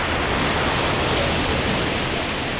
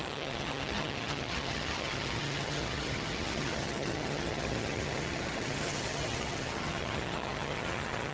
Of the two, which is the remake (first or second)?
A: second